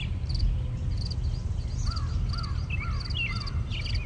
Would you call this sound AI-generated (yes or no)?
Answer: no